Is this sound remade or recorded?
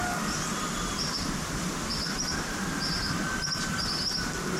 recorded